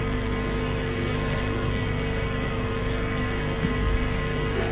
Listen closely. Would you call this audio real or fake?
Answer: fake